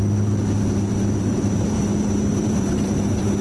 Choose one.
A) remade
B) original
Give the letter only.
A